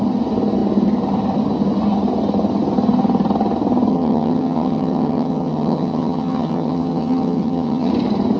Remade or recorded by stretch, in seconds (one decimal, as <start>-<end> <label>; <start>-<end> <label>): 0.0-3.9 recorded; 3.9-7.9 remade; 7.9-8.4 recorded